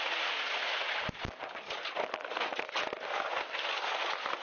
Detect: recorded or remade recorded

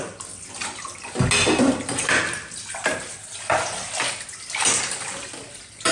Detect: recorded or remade recorded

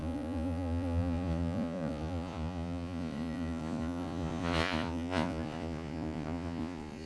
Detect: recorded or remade remade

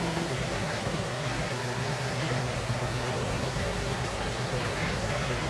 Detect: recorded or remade remade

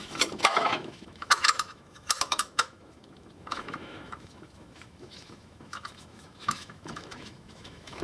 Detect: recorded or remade remade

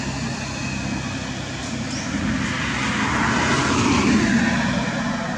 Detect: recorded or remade recorded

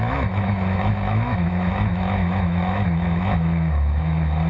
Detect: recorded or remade remade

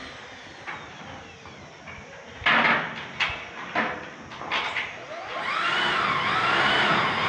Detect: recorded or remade recorded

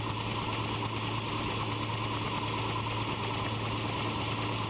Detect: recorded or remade recorded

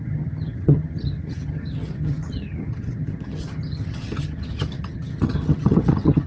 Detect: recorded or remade remade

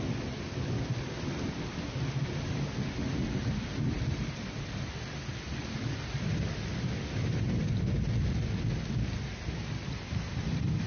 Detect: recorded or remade recorded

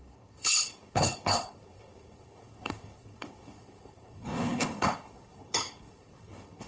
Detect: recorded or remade remade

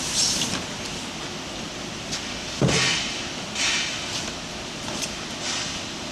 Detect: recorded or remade recorded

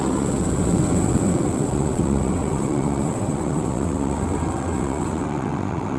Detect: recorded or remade remade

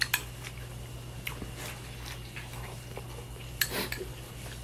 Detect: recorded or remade recorded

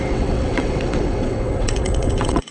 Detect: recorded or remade remade